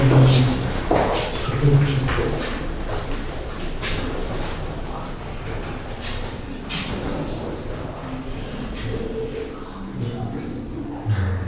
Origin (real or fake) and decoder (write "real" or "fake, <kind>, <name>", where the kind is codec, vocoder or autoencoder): real